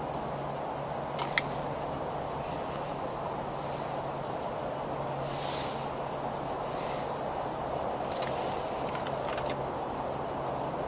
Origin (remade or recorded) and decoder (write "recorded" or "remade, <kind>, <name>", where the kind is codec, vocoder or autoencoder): recorded